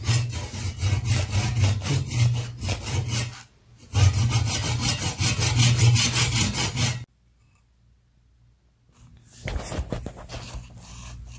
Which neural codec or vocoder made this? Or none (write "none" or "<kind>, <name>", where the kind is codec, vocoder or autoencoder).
none